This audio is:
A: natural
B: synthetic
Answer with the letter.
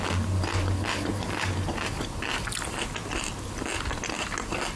A